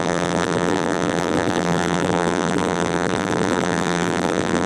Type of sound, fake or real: fake